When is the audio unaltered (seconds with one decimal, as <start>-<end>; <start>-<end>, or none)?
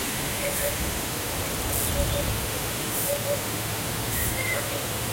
1.3-2.3